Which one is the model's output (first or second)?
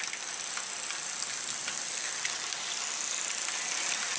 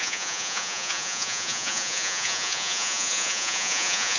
second